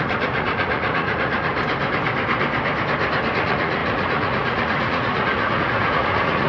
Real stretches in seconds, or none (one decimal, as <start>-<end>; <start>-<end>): 1.5-3.3